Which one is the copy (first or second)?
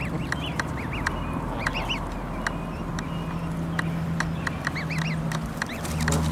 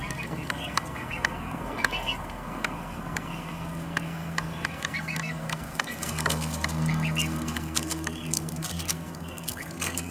second